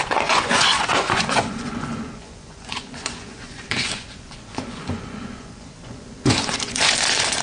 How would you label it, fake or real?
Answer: fake